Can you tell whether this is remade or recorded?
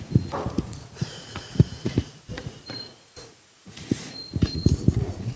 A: remade